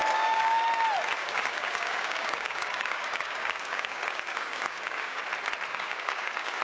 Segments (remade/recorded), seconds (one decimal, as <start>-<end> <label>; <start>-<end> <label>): 0.0-0.6 remade; 0.6-1.2 recorded; 1.2-5.2 remade; 5.2-5.7 recorded; 5.7-6.6 remade